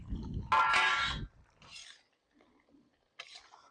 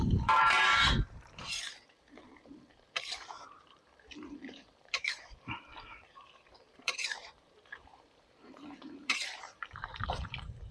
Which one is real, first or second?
first